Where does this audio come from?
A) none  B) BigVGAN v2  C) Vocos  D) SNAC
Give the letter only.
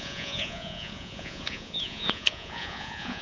C